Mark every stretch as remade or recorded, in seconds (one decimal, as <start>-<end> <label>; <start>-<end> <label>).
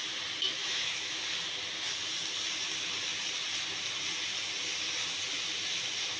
0.0-0.6 recorded; 0.6-1.2 remade; 1.2-6.2 recorded